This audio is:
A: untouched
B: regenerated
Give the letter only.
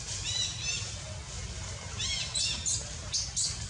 A